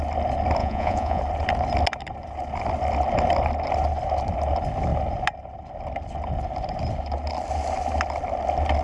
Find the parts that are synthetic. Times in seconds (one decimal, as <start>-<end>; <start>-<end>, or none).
0.6-1.2